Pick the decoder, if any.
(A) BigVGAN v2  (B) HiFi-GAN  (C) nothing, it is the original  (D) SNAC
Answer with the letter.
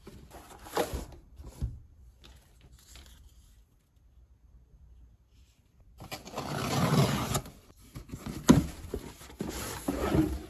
C